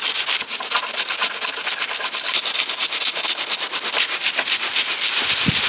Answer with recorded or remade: recorded